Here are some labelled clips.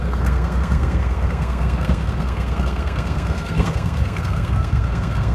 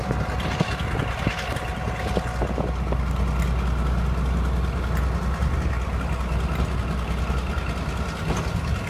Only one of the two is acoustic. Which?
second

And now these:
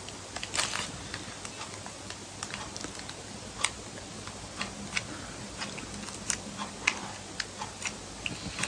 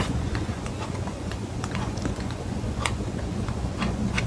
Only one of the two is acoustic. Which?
first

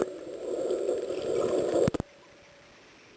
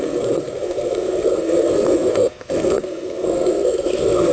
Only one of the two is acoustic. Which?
first